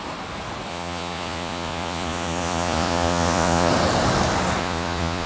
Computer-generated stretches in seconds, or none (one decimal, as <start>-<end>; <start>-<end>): 0.7-3.7; 4.6-5.3